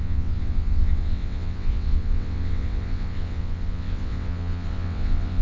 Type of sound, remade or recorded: remade